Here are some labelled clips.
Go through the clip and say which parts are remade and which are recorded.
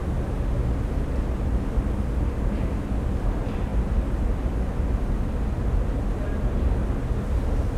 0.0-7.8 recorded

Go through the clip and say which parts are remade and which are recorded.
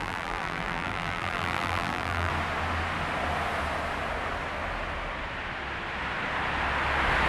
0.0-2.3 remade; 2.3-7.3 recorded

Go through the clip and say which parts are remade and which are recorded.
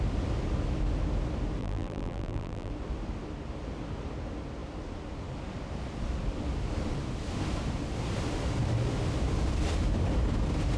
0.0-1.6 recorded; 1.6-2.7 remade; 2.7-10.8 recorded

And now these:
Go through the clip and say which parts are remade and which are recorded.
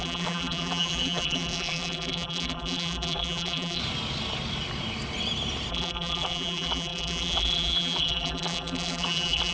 0.0-3.8 remade; 3.8-5.7 recorded; 5.7-9.5 remade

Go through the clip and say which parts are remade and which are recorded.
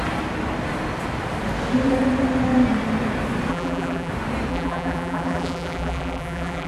0.0-3.5 recorded; 3.5-4.1 remade; 4.1-4.5 recorded; 4.5-6.7 remade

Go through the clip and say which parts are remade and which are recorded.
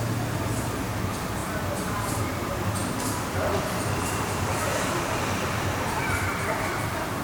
0.0-2.8 recorded; 2.8-7.2 remade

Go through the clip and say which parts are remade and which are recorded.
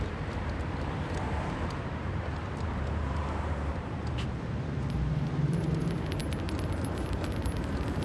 0.0-6.2 remade; 6.2-6.8 recorded; 6.8-8.0 remade